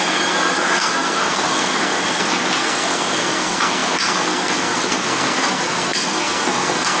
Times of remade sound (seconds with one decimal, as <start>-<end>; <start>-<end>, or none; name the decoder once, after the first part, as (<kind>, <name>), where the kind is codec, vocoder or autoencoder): 0.0-7.0 (codec, SNAC)

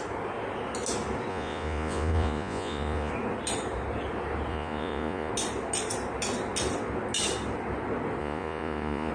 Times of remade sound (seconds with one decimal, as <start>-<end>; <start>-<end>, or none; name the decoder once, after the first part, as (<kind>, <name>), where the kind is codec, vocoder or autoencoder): 1.3-3.1 (vocoder, Vocos); 4.5-5.3; 8.2-9.1

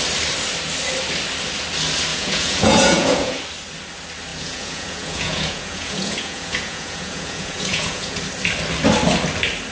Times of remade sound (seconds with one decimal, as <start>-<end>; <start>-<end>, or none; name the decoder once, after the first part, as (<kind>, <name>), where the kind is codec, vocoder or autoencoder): 2.1-3.4 (vocoder, Vocos); 4.3-8.2

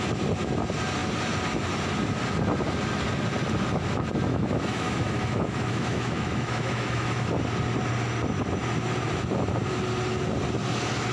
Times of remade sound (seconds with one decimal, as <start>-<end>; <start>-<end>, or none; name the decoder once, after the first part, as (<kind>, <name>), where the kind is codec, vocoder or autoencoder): 4.3-7.3 (autoencoder, DAC-VAE)

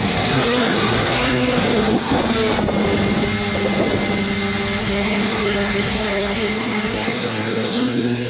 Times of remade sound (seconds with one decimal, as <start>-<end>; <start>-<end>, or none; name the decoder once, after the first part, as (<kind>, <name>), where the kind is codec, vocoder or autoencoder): 0.0-2.2 (codec, SNAC); 4.8-8.3